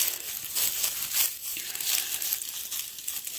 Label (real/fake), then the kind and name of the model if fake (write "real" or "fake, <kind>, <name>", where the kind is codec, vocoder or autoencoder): real